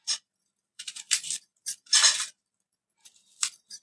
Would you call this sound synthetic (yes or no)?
yes